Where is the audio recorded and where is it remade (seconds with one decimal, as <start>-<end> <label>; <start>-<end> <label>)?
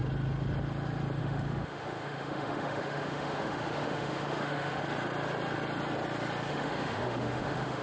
0.0-1.2 recorded; 1.2-4.8 remade; 4.8-6.5 recorded; 6.5-7.8 remade